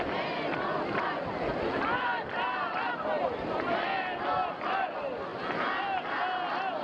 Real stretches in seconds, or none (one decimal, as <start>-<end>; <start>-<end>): 0.0-6.8